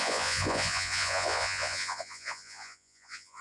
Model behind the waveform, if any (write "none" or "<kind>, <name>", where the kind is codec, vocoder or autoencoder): vocoder, Vocos